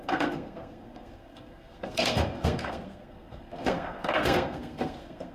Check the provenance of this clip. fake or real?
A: fake